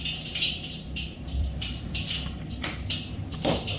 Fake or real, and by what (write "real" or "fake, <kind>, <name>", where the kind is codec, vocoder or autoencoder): fake, vocoder, BigVGAN v2